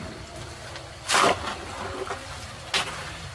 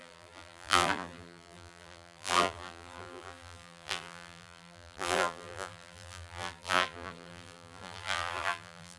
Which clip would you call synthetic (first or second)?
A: second